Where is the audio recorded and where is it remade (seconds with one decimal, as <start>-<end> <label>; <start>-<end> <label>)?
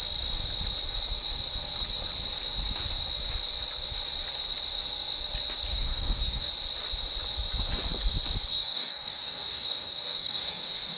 0.0-5.7 recorded; 5.7-6.5 remade; 6.5-8.5 recorded; 8.5-11.0 remade